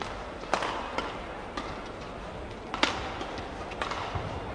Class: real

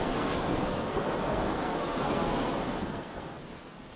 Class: fake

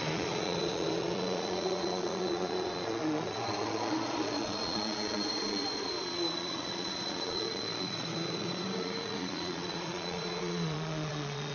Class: fake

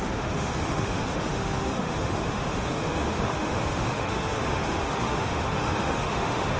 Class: fake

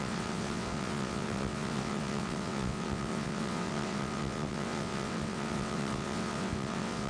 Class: fake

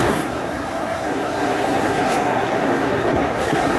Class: fake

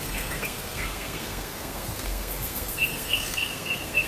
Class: fake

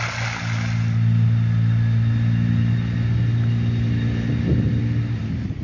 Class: real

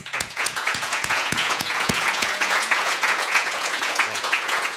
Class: fake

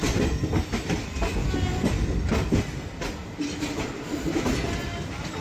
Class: real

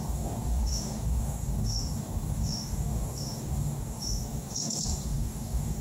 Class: fake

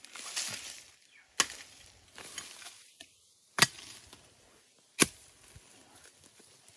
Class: real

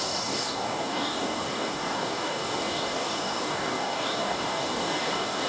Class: fake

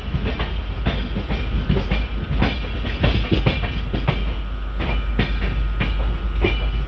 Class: real